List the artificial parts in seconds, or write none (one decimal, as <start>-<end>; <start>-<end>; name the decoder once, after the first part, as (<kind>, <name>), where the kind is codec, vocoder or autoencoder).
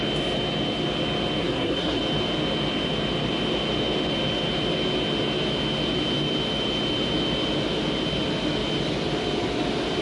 1.4-2.0 (codec, SNAC)